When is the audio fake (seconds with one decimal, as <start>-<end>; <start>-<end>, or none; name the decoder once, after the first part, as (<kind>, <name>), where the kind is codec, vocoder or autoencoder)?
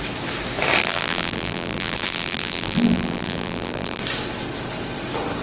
0.8-4.0 (vocoder, BigVGAN v2)